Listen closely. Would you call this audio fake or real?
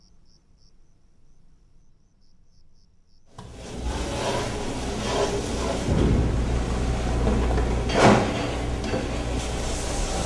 real